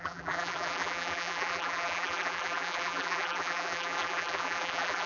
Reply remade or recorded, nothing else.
remade